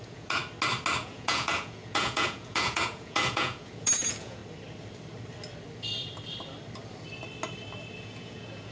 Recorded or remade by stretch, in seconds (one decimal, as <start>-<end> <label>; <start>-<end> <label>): 0.0-0.4 remade; 0.4-1.0 recorded; 1.0-4.4 remade; 4.4-8.0 recorded; 8.0-8.7 remade